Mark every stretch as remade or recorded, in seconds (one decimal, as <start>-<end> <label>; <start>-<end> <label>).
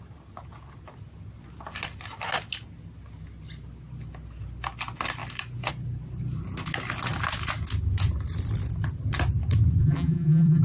0.0-9.8 recorded; 9.8-10.6 remade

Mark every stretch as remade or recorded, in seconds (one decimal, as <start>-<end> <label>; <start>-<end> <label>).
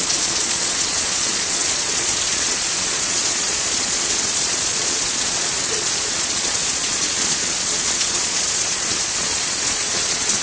0.0-10.4 remade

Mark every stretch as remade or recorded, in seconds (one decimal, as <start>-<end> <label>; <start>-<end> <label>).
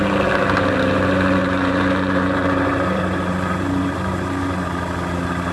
0.0-1.4 recorded; 1.4-4.1 remade; 4.1-5.5 recorded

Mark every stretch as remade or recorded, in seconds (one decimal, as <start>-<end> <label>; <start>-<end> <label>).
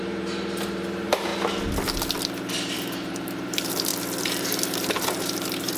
0.0-1.3 remade; 1.3-2.5 recorded; 2.5-3.9 remade; 3.9-4.9 recorded; 4.9-5.8 remade